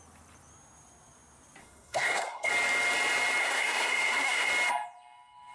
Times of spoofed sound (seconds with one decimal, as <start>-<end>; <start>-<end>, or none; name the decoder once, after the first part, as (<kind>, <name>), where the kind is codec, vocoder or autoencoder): 1.6-2.5 (codec, SNAC); 3.4-4.5